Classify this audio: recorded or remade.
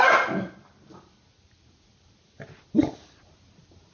recorded